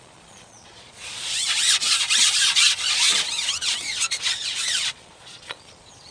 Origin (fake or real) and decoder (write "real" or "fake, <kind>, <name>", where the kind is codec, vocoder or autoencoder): fake, vocoder, Vocos